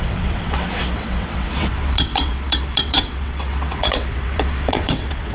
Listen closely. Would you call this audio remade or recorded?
remade